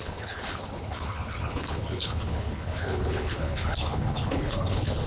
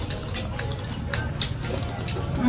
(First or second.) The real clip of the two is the second